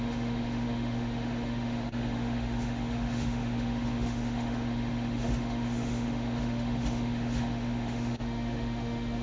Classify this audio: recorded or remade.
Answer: remade